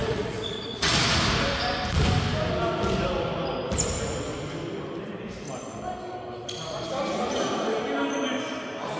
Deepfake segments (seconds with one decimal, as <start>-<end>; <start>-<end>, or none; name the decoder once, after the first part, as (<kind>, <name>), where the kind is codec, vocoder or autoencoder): 0.0-0.9 (vocoder, Vocos)